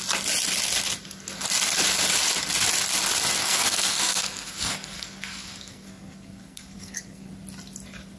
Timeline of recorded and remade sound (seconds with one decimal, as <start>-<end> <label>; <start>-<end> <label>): 0.0-3.4 recorded; 3.4-7.3 remade; 7.3-8.2 recorded